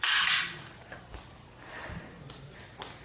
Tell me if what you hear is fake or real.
real